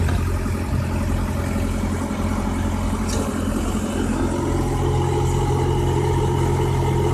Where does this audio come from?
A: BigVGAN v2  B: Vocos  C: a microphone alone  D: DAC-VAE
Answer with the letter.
C